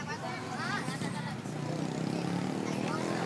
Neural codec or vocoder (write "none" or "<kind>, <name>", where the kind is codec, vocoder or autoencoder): none